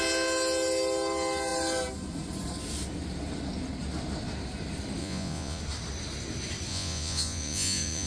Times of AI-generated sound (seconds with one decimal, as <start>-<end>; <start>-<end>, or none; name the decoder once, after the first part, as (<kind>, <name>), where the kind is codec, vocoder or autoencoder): 5.0-5.6 (vocoder, Vocos); 6.7-8.1